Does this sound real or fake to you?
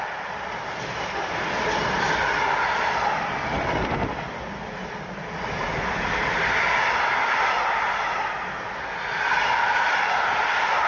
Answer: real